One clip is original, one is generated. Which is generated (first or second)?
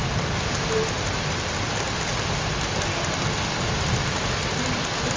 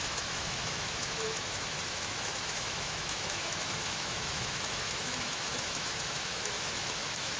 second